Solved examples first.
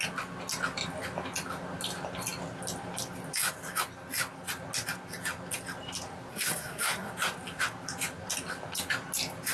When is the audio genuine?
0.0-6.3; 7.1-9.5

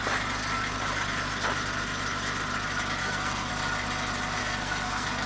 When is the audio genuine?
0.0-3.0; 3.5-4.4

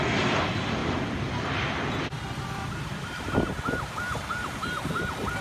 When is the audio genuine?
0.0-5.4

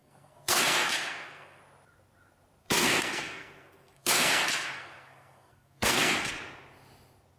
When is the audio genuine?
1.6-2.6; 6.3-7.4